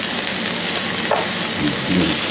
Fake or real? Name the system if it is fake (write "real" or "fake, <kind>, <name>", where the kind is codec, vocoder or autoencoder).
real